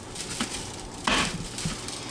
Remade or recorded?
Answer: recorded